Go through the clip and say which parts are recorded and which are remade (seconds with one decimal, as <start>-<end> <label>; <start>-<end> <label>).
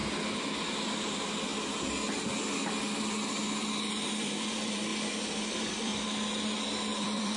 0.0-0.7 recorded; 0.7-1.5 remade; 1.5-4.1 recorded; 4.1-4.9 remade; 4.9-5.5 recorded; 5.5-5.9 remade; 5.9-7.0 recorded; 7.0-7.4 remade